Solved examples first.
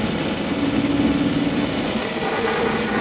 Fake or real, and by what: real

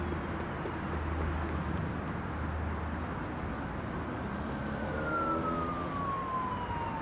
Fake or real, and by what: real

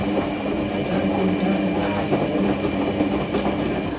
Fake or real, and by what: real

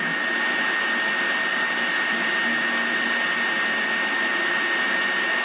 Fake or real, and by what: real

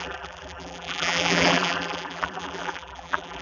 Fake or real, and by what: fake, vocoder, BigVGAN v2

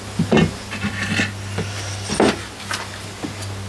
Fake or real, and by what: real